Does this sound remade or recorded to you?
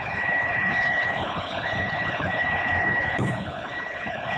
remade